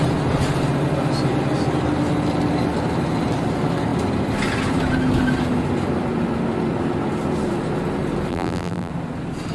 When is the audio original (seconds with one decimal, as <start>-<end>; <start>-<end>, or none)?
0.0-8.3; 8.9-9.5